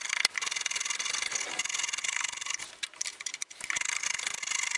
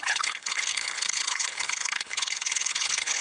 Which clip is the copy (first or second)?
second